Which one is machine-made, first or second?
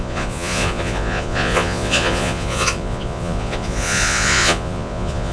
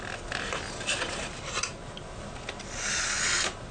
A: first